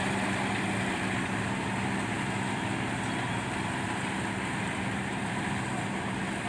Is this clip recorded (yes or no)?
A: yes